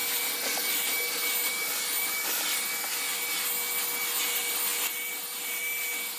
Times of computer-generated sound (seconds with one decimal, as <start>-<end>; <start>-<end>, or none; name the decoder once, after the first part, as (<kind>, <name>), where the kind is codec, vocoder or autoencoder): none